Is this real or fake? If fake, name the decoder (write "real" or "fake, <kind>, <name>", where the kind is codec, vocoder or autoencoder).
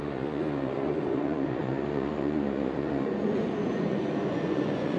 fake, vocoder, Vocos